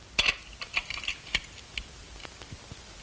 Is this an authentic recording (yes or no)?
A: yes